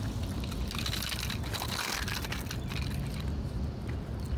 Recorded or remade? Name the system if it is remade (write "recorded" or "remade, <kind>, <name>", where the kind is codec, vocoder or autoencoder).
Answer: recorded